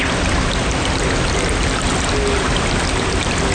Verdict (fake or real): real